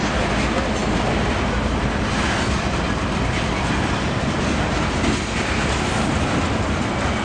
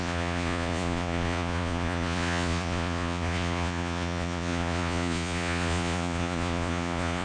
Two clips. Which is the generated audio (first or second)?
second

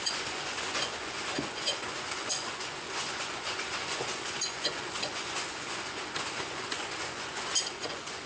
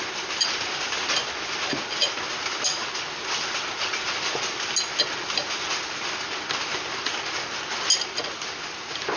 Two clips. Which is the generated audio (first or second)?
first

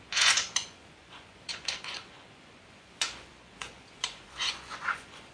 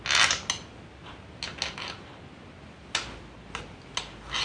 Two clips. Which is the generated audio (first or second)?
first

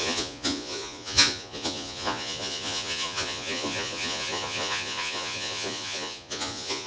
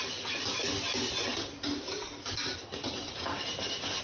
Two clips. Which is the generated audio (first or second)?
first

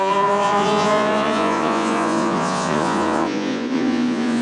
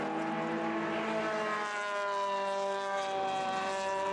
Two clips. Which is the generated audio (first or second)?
first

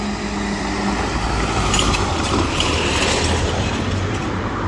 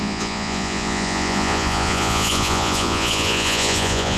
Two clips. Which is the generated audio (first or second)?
second